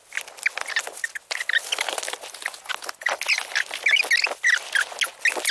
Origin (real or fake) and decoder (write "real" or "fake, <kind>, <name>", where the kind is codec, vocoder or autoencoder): real